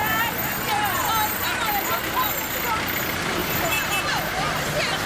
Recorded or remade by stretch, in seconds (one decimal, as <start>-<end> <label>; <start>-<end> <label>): 0.0-5.1 recorded